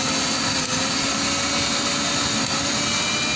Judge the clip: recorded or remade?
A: recorded